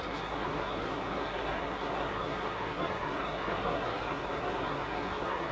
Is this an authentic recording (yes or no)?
no